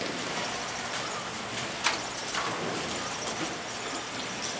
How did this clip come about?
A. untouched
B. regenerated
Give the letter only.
A